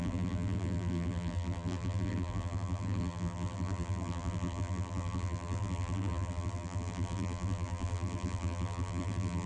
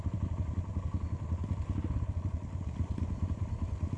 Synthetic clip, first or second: first